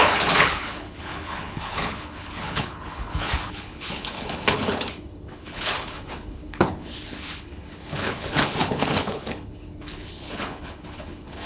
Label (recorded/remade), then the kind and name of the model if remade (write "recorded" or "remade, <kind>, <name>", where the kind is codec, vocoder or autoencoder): remade, codec, HILCodec